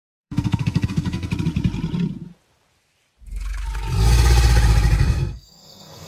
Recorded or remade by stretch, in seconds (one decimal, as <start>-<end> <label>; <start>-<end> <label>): 0.0-1.3 remade; 1.3-5.0 recorded; 5.0-6.1 remade